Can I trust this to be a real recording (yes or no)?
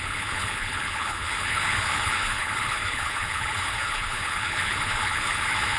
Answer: no